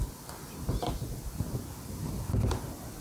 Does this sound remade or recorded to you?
recorded